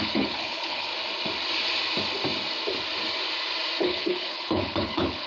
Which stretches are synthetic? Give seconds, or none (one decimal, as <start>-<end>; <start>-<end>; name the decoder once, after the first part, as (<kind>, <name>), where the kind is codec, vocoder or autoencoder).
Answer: 0.0-0.9 (codec, HILCodec); 3.8-5.3